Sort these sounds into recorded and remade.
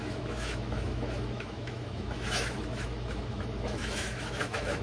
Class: remade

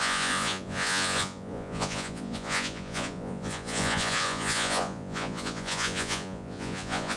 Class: remade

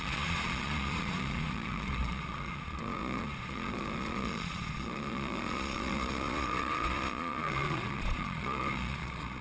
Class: remade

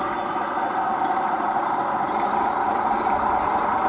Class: recorded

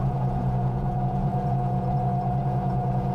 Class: remade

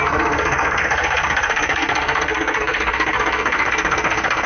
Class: remade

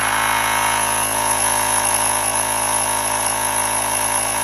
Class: remade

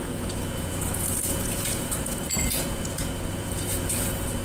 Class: remade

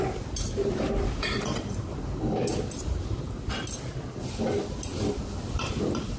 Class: recorded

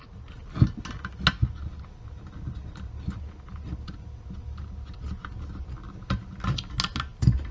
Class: recorded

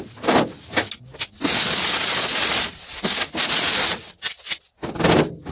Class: recorded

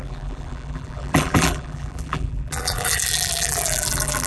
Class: remade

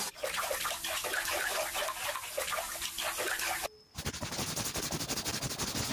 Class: recorded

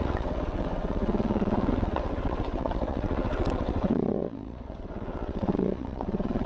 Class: remade